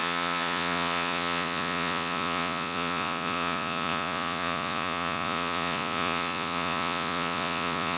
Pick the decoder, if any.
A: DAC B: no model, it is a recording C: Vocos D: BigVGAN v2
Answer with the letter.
C